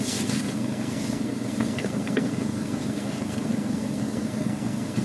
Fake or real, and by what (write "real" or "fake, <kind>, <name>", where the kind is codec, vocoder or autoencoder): fake, codec, SNAC